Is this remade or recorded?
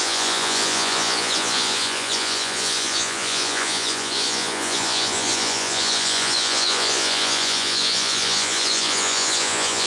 remade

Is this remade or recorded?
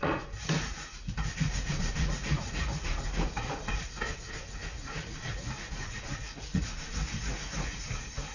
remade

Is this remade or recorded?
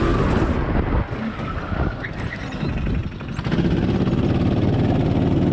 recorded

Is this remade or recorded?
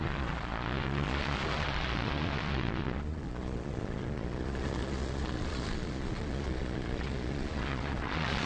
remade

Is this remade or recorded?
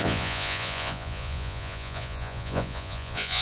remade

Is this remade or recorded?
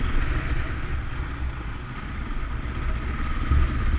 recorded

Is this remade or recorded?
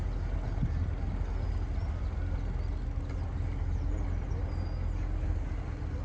recorded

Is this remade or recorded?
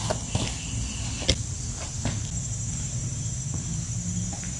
recorded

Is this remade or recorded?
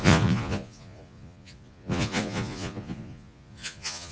remade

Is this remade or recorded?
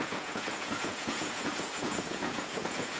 remade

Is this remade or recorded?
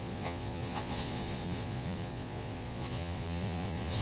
remade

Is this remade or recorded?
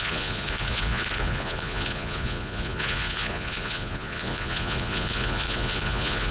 remade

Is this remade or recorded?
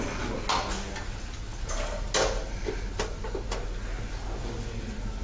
recorded